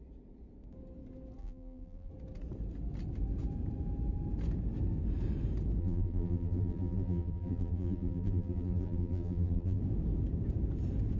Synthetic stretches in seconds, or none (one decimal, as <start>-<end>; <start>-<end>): 1.4-2.1; 5.8-9.8